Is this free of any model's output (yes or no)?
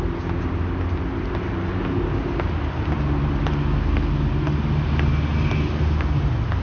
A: yes